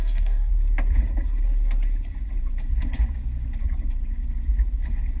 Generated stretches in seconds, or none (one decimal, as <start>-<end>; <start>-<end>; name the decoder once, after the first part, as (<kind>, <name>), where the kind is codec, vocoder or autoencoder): 0.0-0.5 (codec, DAC)